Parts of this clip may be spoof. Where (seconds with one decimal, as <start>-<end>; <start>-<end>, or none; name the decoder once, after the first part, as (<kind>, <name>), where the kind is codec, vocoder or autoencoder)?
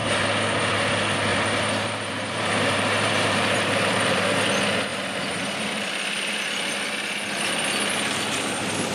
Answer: 1.3-4.4 (vocoder, BigVGAN v2); 4.9-5.7